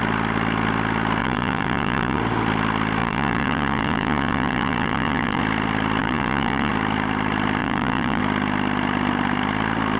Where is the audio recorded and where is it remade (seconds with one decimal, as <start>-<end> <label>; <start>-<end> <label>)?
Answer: 0.0-1.2 recorded; 1.2-2.2 remade; 2.2-3.0 recorded; 3.0-5.4 remade; 5.4-6.0 recorded; 6.0-6.7 remade; 6.7-7.6 recorded; 7.6-8.2 remade; 8.2-10.0 recorded